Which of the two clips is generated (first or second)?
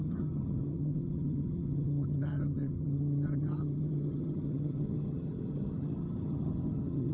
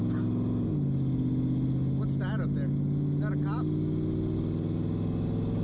first